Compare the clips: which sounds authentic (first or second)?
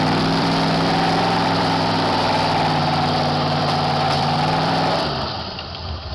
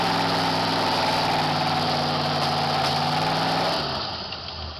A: second